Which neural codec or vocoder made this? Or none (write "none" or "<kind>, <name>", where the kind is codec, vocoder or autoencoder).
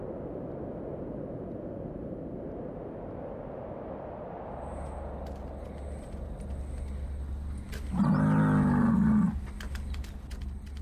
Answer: none